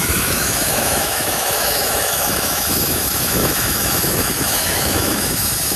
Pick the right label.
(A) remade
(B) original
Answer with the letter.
A